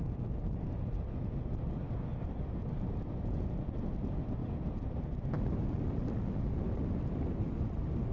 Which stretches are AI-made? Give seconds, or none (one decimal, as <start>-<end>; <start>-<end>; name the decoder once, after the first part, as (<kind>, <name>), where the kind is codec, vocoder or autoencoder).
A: none

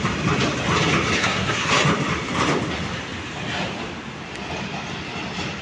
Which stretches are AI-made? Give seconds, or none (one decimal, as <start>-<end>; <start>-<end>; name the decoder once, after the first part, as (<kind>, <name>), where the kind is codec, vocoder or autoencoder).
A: 1.2-1.7 (codec, SNAC)